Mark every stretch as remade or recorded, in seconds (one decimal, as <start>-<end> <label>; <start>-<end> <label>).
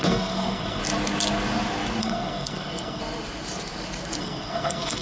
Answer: 0.0-0.8 remade; 0.8-2.0 recorded; 2.0-3.0 remade; 3.0-4.2 recorded; 4.2-5.0 remade